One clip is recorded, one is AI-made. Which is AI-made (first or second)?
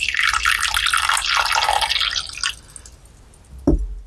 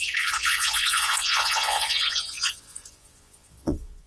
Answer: second